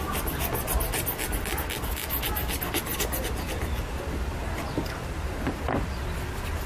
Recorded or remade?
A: recorded